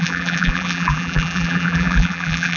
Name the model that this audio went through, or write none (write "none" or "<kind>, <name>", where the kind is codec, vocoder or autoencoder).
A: vocoder, BigVGAN v2